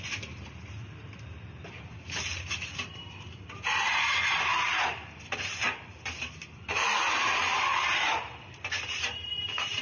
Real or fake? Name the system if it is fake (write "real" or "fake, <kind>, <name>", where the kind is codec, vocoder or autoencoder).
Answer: fake, vocoder, BigVGAN v2